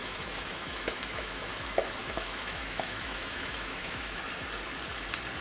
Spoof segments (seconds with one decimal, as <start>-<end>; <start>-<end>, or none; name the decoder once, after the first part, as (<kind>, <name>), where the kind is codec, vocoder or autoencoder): 0.0-1.5 (autoencoder, DAC-VAE); 2.0-4.2